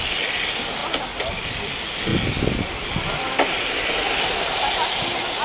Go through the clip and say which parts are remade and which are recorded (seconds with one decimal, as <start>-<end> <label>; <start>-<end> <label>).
0.0-5.4 recorded